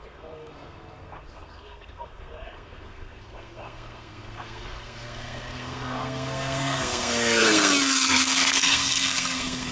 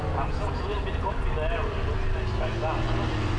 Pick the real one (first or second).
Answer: second